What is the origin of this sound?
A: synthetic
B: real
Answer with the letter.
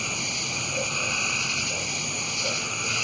B